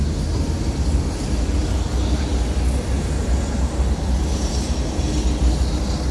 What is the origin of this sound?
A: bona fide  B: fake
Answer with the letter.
A